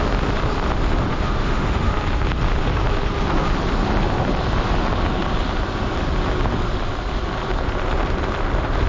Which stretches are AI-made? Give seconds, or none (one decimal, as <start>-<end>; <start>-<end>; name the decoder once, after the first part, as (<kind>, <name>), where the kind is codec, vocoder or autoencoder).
1.1-1.9 (autoencoder, DAC-VAE)